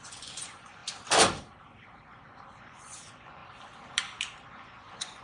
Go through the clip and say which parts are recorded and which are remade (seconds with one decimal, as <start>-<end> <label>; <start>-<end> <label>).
0.0-0.8 remade; 0.8-2.6 recorded; 2.6-3.4 remade; 3.4-4.5 recorded; 4.5-5.2 remade